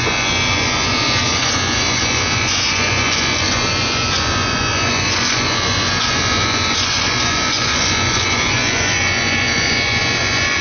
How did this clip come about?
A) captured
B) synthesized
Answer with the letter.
B